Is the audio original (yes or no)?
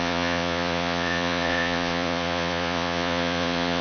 no